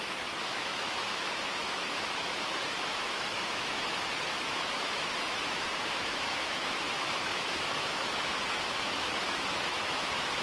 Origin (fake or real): fake